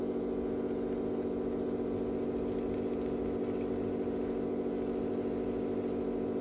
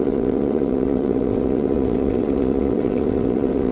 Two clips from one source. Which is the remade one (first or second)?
second